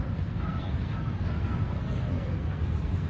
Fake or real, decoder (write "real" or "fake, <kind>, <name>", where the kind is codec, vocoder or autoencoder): fake, codec, SNAC